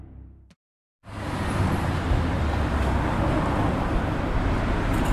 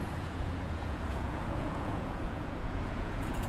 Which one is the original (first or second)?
first